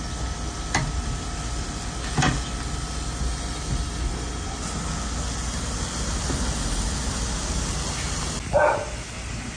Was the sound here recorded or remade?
recorded